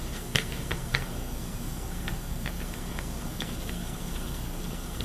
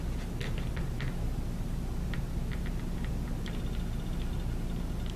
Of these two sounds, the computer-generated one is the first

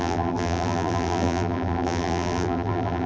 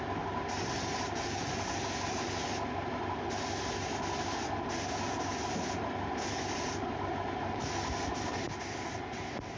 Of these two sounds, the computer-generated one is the first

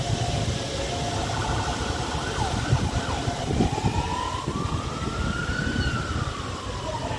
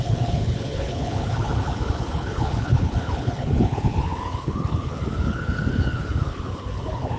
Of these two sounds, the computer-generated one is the second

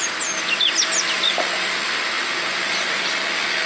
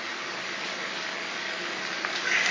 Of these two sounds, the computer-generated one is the second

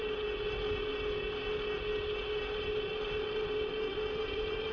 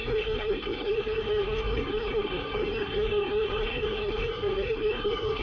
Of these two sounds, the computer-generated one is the second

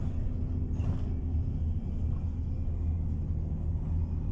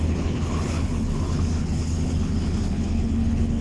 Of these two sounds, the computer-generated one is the second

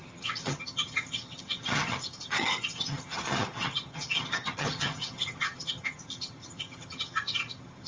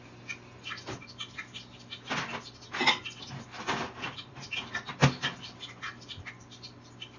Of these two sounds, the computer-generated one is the first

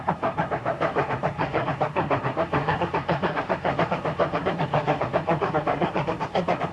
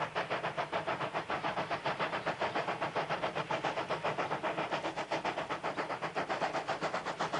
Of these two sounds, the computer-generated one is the first